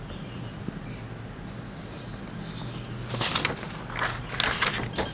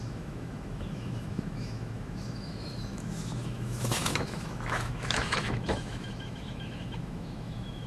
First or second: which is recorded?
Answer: first